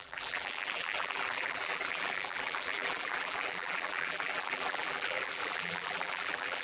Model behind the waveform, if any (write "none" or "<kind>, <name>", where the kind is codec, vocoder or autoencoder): vocoder, BigVGAN v2